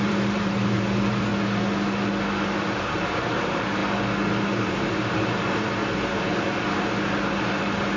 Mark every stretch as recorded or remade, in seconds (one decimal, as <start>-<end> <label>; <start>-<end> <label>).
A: 0.0-1.3 remade; 1.3-2.8 recorded; 2.8-3.8 remade; 3.8-4.6 recorded; 4.6-5.8 remade; 5.8-7.5 recorded; 7.5-8.0 remade